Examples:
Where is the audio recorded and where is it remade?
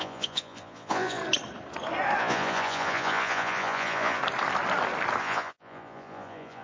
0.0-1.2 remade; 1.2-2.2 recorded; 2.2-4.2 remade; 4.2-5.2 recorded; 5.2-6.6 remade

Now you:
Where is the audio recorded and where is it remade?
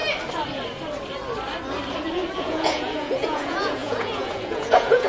0.0-2.4 recorded; 2.4-5.1 remade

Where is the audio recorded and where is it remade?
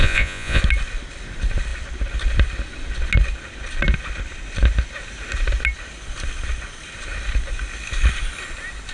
0.0-0.6 remade; 0.6-8.9 recorded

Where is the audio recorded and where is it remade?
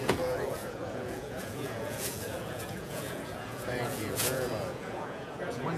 0.0-5.8 remade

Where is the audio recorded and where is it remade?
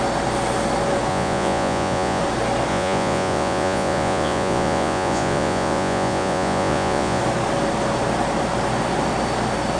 0.0-1.1 recorded; 1.1-2.2 remade; 2.2-2.7 recorded; 2.7-7.2 remade; 7.2-9.8 recorded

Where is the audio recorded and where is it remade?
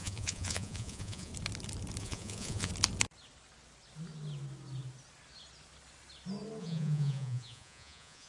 0.0-1.3 remade; 1.3-2.0 recorded; 2.0-2.7 remade; 2.7-6.6 recorded; 6.6-8.3 remade